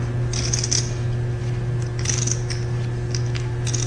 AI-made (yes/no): no